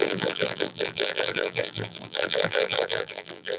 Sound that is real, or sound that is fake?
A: fake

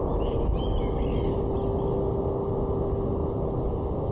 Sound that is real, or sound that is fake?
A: real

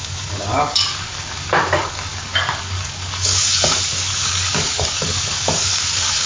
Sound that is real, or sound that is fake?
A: fake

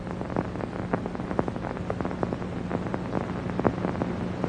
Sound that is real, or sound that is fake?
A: real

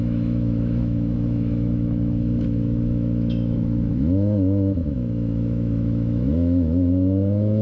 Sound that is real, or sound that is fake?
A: fake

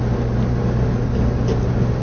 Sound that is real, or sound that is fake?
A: real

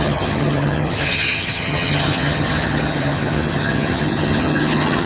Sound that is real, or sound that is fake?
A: fake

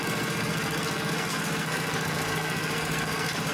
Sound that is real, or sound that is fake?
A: fake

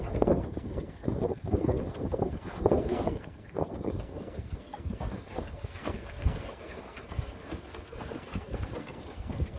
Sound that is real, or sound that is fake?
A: fake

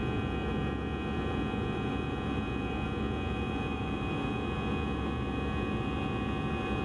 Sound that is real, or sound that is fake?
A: fake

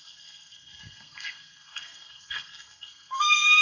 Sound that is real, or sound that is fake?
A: fake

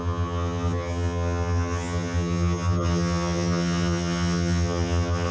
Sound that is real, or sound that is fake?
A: fake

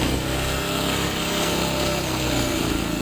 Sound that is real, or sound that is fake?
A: fake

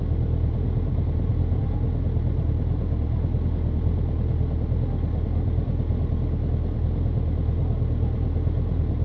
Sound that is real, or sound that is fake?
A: real